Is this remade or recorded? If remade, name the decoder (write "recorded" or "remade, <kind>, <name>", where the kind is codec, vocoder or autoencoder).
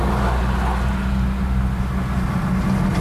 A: recorded